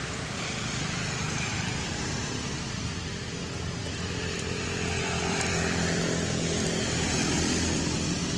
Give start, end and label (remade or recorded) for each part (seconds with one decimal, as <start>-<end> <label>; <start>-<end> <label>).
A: 0.0-3.8 recorded; 3.8-6.0 remade; 6.0-8.4 recorded